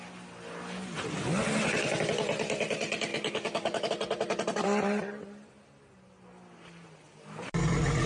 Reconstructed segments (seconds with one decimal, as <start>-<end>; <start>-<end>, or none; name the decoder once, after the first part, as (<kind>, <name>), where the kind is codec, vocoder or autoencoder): 3.1-3.9 (codec, DAC)